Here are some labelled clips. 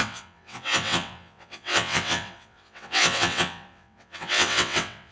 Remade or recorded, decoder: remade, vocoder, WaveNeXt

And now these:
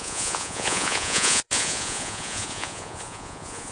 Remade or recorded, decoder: remade, vocoder, Vocos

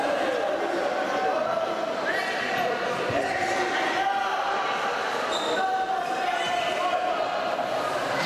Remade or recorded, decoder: recorded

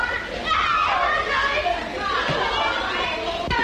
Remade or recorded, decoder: recorded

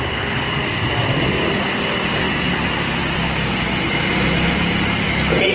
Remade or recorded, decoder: remade, vocoder, BigVGAN v2